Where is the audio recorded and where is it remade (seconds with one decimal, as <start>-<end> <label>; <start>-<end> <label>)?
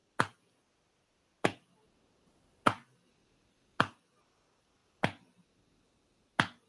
0.0-6.7 recorded